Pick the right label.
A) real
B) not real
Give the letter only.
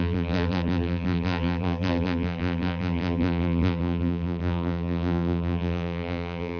B